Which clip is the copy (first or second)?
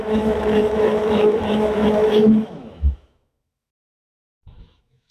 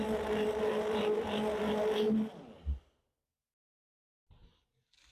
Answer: first